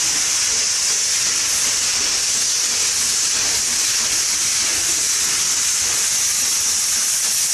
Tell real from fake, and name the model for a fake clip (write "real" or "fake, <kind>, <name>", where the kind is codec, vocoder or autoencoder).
real